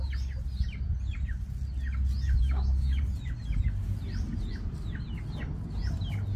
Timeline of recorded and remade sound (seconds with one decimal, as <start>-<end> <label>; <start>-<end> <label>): 0.0-2.4 recorded; 2.4-3.0 remade; 3.0-6.4 recorded